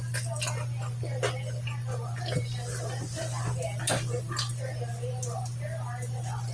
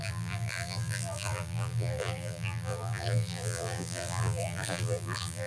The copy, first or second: second